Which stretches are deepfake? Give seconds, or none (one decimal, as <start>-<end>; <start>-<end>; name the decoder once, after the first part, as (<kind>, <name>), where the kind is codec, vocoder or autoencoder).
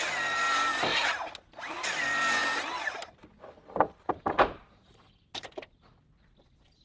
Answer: none